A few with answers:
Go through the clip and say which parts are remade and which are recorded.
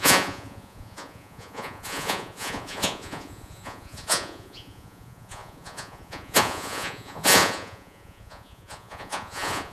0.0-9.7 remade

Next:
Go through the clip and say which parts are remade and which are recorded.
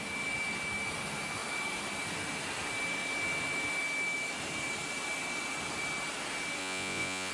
0.0-6.6 recorded; 6.6-7.3 remade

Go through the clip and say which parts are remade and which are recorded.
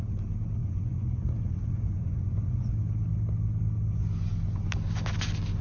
0.0-0.6 recorded; 0.6-2.7 remade; 2.7-5.6 recorded